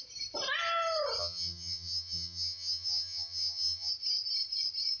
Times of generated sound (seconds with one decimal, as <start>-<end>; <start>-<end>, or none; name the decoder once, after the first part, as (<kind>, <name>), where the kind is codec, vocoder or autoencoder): 1.2-3.9 (vocoder, HiFi-GAN)